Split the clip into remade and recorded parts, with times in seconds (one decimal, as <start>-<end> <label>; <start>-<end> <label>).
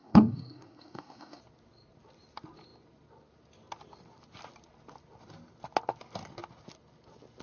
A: 0.0-1.4 remade; 1.4-7.4 recorded